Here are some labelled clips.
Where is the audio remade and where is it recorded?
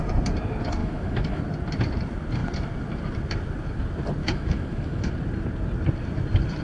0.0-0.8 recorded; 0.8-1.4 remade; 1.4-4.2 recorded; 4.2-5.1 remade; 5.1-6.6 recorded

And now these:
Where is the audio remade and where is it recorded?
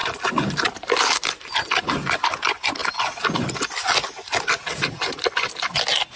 0.0-6.2 recorded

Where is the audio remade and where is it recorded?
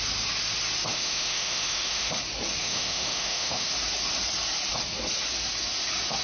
0.0-0.9 recorded; 0.9-2.1 remade; 2.1-2.6 recorded; 2.6-3.7 remade; 3.7-6.2 recorded